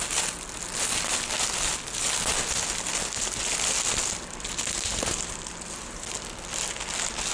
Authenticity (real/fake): real